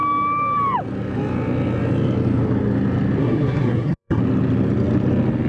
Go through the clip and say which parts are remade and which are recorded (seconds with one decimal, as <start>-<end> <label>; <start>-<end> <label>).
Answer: 0.0-3.2 recorded; 3.2-4.2 remade; 4.2-5.5 recorded